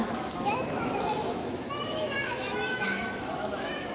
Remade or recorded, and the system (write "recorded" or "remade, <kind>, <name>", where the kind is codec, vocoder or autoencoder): remade, autoencoder, DAC-VAE